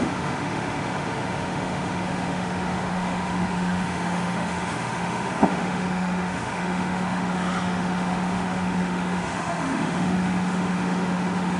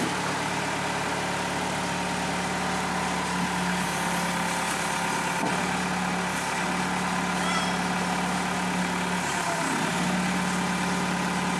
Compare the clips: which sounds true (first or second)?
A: second